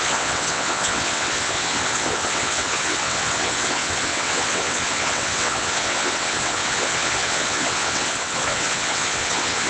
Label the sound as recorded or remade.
remade